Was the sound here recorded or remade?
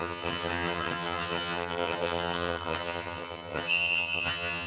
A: remade